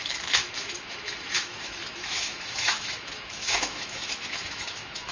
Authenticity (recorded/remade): remade